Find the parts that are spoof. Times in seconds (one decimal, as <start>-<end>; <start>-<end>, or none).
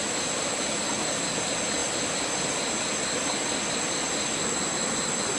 none